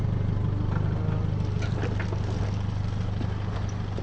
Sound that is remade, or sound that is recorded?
recorded